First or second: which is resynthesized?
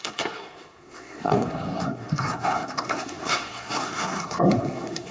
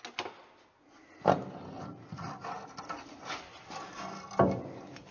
first